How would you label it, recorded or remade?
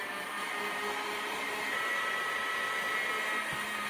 remade